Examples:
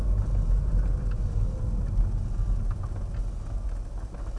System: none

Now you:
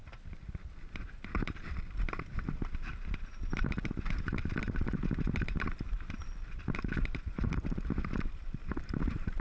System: vocoder, BigVGAN v2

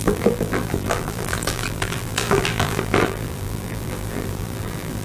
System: vocoder, BigVGAN v2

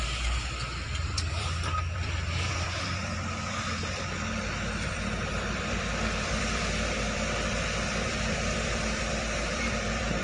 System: vocoder, BigVGAN v2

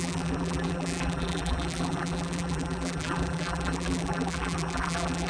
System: vocoder, BigVGAN v2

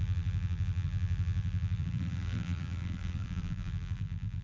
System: vocoder, BigVGAN v2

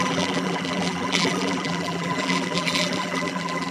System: vocoder, BigVGAN v2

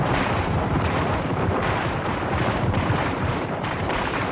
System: vocoder, BigVGAN v2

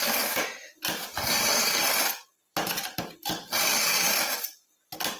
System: vocoder, BigVGAN v2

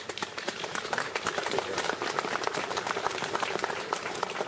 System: vocoder, BigVGAN v2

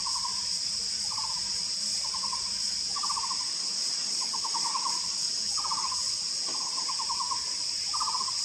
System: vocoder, BigVGAN v2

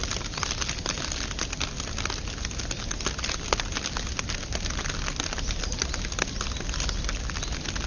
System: none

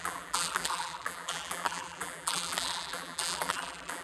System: vocoder, BigVGAN v2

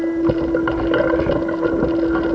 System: none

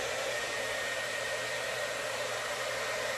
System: vocoder, BigVGAN v2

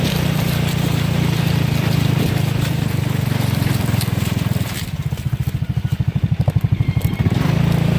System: vocoder, BigVGAN v2